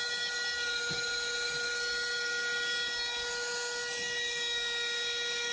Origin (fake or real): real